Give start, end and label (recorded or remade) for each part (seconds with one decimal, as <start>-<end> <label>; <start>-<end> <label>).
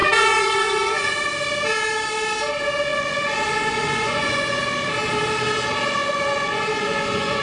0.0-1.1 remade; 1.1-2.9 recorded; 2.9-4.6 remade; 4.6-6.0 recorded; 6.0-7.4 remade